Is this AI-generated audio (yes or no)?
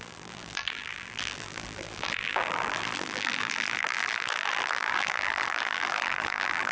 yes